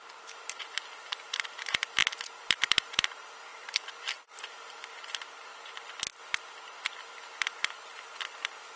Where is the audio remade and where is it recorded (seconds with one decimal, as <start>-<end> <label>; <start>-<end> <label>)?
0.0-5.5 remade; 5.5-8.8 recorded